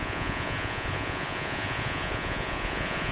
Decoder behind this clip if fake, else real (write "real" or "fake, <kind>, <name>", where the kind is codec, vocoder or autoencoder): fake, vocoder, Vocos